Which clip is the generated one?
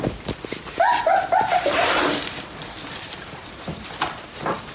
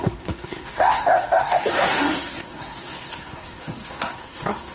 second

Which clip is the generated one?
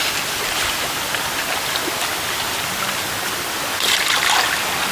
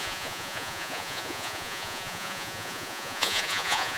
second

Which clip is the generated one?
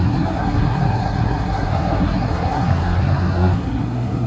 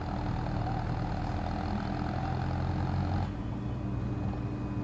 first